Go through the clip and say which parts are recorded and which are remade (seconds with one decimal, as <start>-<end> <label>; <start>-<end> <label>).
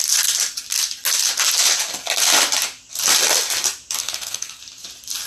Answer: 0.0-4.0 recorded; 4.0-4.6 remade; 4.6-5.3 recorded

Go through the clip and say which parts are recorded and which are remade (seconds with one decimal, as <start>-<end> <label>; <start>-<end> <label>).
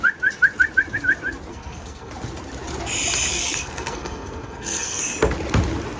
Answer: 0.0-1.5 recorded; 1.5-2.1 remade; 2.1-3.3 recorded; 3.3-5.0 remade; 5.0-6.0 recorded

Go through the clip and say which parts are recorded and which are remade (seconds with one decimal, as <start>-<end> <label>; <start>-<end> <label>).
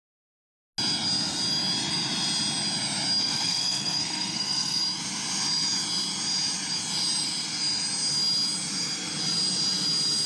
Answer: 0.0-3.2 recorded; 3.2-4.8 remade; 4.8-10.3 recorded